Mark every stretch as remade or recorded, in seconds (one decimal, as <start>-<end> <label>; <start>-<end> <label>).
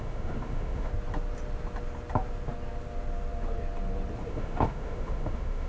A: 0.0-0.9 remade; 0.9-4.3 recorded; 4.3-5.7 remade